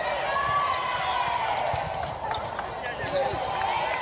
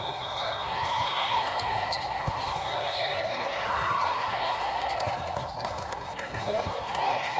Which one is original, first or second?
first